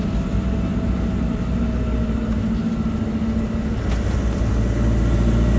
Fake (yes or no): no